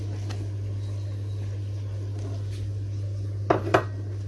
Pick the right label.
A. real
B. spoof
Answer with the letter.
A